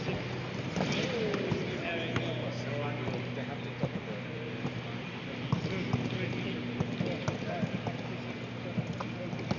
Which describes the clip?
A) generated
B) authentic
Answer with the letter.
B